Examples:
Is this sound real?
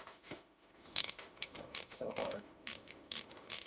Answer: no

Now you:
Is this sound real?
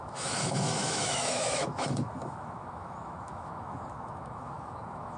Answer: no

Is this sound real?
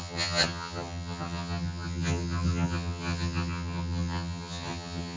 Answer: no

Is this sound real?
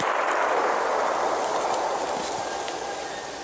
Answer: yes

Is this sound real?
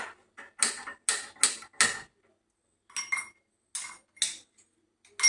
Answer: yes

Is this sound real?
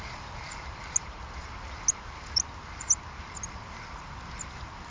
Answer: yes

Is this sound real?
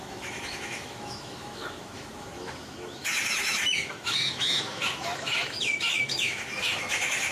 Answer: no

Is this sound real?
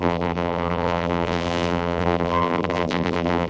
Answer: no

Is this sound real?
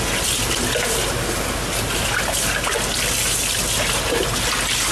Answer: yes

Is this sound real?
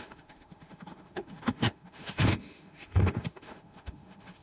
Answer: no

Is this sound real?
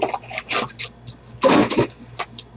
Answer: yes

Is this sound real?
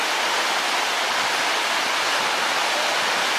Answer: yes